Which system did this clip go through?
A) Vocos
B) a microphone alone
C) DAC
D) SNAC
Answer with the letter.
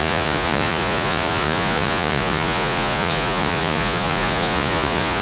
A